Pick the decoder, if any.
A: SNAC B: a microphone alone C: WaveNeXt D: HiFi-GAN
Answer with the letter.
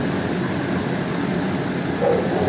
B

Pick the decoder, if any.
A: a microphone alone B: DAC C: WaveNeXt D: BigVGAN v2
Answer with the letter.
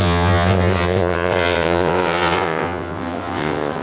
C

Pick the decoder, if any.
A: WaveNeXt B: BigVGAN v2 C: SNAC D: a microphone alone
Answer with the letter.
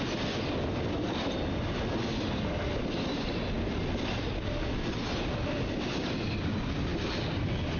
D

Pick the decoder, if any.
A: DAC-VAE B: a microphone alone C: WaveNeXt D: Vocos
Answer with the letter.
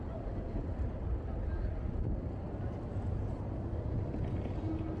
B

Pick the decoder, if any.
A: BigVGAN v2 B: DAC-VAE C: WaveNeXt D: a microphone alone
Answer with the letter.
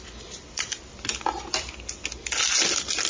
D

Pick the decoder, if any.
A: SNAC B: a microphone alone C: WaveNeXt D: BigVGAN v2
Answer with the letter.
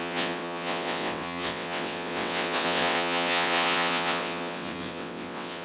C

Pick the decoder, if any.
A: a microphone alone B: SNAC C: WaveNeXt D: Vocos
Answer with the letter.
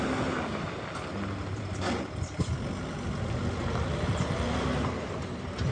A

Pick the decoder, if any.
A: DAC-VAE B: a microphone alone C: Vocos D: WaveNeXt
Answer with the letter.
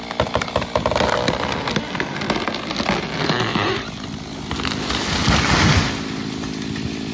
B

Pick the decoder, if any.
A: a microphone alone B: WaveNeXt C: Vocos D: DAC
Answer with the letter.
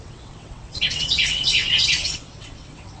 B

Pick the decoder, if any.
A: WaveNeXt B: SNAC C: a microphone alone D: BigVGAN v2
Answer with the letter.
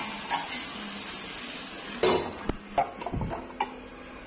C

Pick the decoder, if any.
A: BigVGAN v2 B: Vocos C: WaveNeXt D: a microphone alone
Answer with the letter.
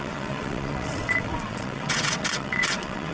C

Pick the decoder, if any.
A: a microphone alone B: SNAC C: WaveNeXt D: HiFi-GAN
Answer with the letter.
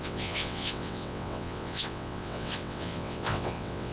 C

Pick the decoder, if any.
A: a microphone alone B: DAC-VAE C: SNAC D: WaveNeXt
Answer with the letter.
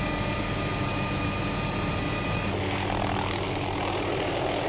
A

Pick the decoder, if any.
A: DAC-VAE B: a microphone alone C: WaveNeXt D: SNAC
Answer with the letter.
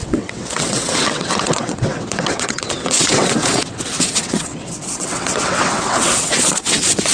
C